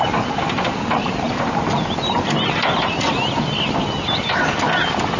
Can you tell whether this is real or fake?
real